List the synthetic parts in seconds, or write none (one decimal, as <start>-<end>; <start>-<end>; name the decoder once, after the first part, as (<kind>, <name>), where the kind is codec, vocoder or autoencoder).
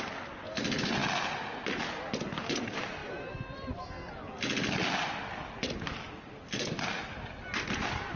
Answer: none